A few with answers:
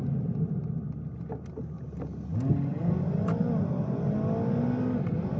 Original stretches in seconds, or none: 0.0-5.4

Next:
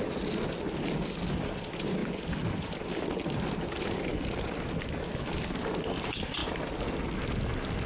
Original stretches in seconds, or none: 0.0-7.9

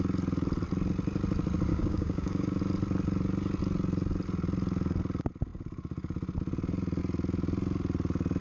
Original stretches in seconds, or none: 0.0-1.7; 2.6-8.4

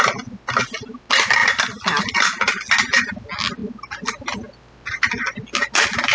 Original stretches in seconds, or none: 0.0-6.1

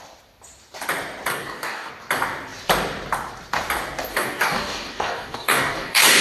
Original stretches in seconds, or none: 0.0-1.3; 1.9-4.1

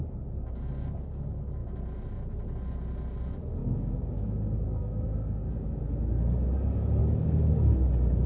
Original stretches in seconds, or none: 0.0-3.6; 5.8-7.0; 7.6-8.3